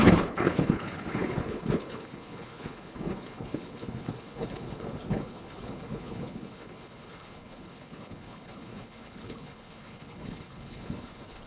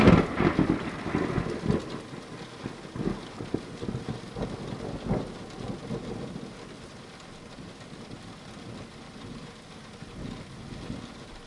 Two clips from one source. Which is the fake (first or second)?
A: first